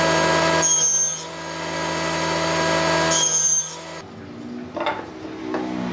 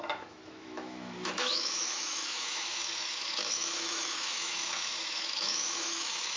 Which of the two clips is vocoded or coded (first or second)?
second